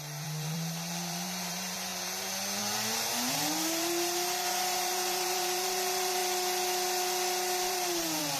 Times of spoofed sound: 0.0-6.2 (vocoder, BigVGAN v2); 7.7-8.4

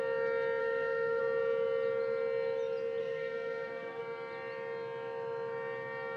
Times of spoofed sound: 0.6-1.2 (codec, SNAC); 3.0-4.0

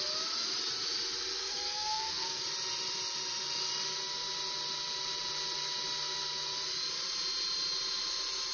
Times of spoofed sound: 1.4-2.4 (codec, SNAC)

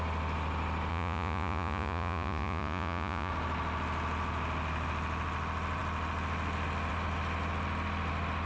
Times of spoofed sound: 0.9-3.3 (vocoder, Vocos)

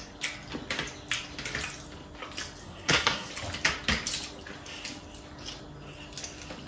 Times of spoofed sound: 2.6-3.3 (codec, SNAC)

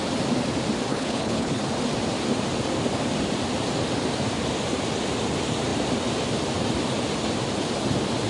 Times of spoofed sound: 0.9-1.6 (codec, HILCodec)

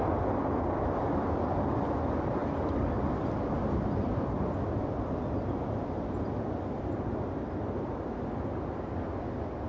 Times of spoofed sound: none

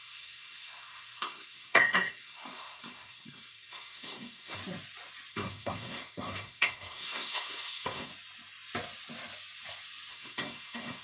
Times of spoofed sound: 0.0-4.6 (codec, SNAC); 5.3-8.1; 10.1-11.0